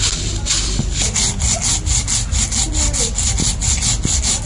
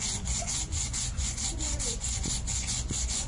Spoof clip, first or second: second